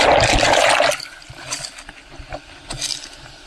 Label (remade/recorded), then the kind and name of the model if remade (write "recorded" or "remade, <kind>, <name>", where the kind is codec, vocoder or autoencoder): recorded